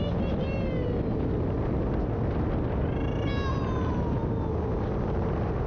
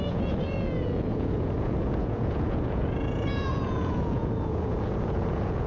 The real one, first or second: first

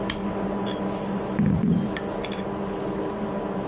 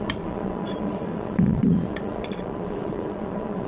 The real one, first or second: first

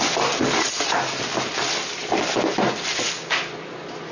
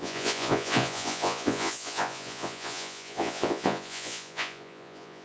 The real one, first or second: first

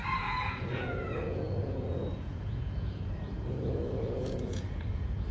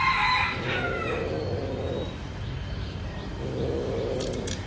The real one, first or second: second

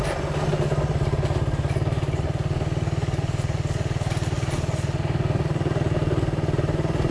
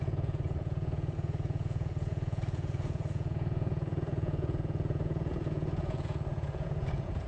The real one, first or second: first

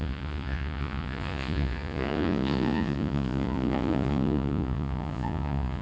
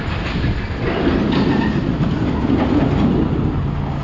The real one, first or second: second